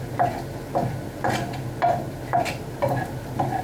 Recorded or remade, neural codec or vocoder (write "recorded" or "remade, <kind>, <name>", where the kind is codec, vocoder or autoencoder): recorded